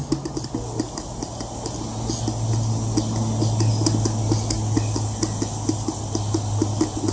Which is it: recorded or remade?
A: recorded